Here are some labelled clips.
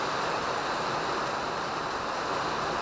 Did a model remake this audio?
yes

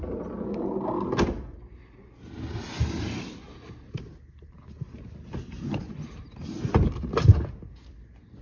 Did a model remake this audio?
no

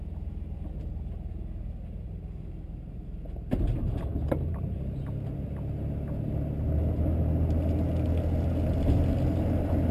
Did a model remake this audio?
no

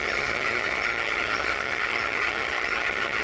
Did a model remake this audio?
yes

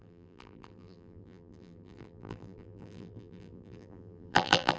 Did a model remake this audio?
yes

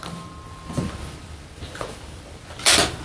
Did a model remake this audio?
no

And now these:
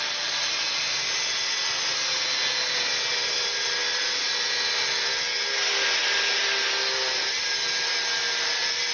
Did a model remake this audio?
no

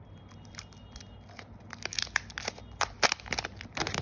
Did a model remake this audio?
no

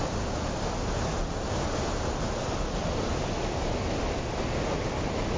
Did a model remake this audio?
no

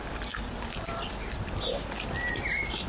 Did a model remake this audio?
no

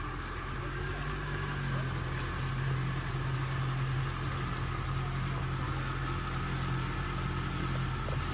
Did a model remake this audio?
no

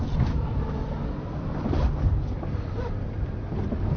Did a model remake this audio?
no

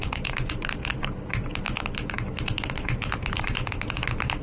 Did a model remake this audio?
yes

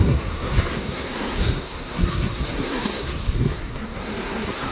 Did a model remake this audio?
yes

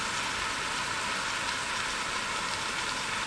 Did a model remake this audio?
no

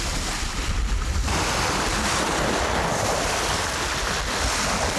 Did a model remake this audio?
no